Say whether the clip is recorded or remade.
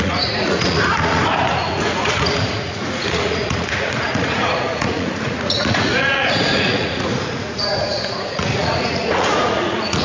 remade